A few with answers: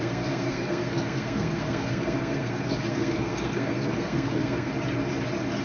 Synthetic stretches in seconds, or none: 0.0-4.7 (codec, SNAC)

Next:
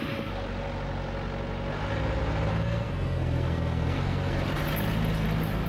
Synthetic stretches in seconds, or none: 2.5-4.4 (codec, SNAC)

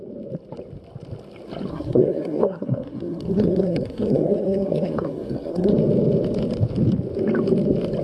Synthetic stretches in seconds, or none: 1.7-5.7 (codec, SNAC)

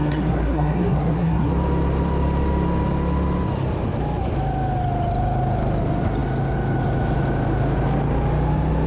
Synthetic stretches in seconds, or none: 0.0-1.5 (codec, SNAC)

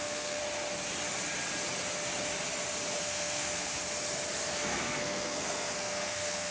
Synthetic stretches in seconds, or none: 0.0-0.4 (codec, SNAC); 3.0-3.7; 4.5-6.5